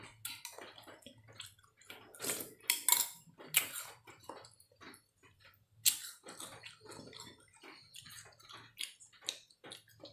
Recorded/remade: recorded